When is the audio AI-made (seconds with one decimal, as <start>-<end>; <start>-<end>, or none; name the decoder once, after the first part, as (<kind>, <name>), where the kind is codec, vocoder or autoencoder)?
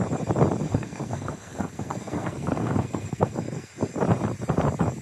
0.7-3.7 (codec, SNAC)